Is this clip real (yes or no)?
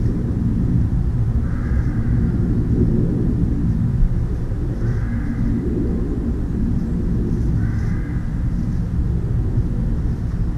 yes